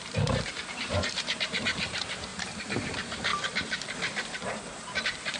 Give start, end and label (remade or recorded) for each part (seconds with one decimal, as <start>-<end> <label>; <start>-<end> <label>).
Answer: 0.0-3.3 remade; 3.3-5.0 recorded; 5.0-5.4 remade